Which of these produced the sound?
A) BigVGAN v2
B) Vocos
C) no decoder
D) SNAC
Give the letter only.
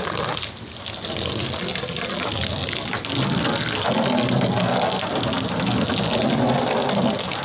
C